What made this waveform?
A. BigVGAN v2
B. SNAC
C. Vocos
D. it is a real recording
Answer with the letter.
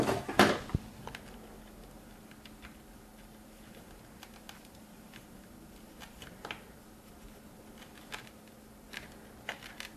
D